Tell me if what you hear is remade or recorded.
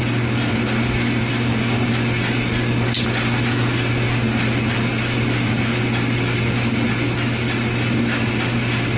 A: recorded